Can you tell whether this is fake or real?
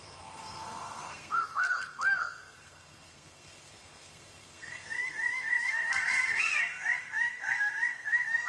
fake